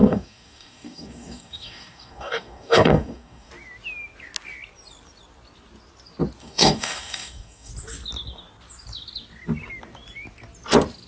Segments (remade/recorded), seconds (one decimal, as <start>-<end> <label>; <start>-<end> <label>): 0.0-3.5 remade; 3.5-6.4 recorded; 6.4-7.7 remade; 7.7-11.1 recorded